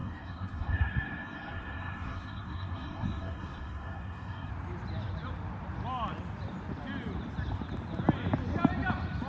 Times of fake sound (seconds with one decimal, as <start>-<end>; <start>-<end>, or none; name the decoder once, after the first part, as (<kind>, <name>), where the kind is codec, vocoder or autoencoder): 0.0-4.5 (codec, SNAC)